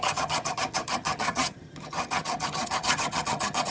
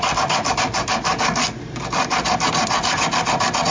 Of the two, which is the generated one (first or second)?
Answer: first